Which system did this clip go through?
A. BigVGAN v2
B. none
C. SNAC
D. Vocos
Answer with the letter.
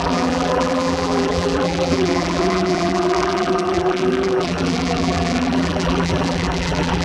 A